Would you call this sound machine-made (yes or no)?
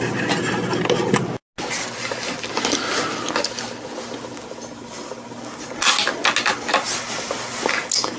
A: no